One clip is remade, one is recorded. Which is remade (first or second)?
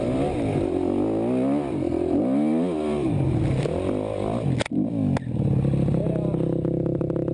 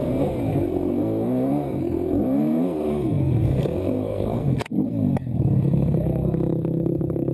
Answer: second